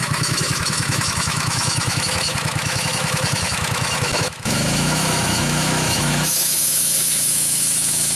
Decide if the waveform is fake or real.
fake